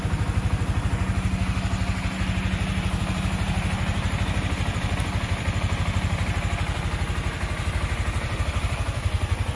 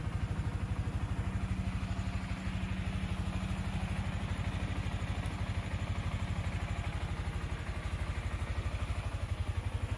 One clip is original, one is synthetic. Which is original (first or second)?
second